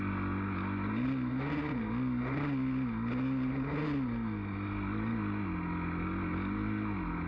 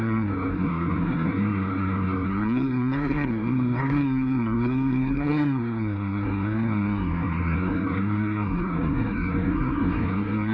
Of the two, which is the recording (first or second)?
first